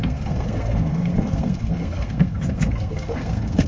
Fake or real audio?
fake